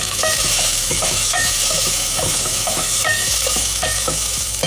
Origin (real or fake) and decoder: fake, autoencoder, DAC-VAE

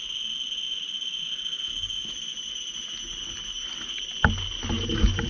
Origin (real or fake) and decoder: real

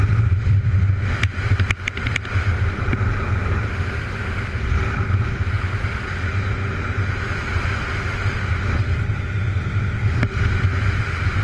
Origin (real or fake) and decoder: real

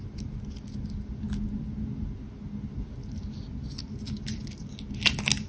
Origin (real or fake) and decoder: real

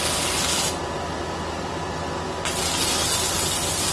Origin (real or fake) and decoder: real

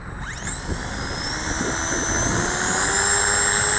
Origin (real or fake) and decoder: real